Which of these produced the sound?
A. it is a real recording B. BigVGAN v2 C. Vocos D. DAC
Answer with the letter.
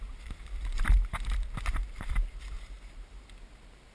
B